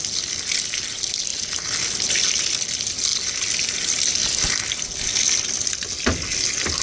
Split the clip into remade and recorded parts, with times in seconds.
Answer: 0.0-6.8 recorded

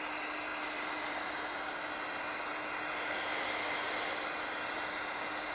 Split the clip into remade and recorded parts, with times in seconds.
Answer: 0.0-5.5 recorded

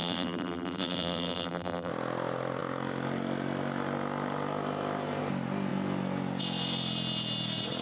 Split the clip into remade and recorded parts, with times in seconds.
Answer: 0.0-1.9 remade; 1.9-7.8 recorded

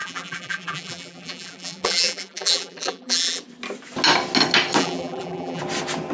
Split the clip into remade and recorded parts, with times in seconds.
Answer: 0.0-3.4 remade; 3.4-4.8 recorded; 4.8-5.6 remade; 5.6-6.1 recorded

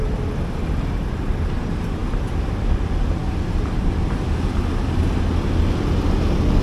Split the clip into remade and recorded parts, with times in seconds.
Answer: 0.0-0.6 remade; 0.6-3.2 recorded; 3.2-5.0 remade; 5.0-6.6 recorded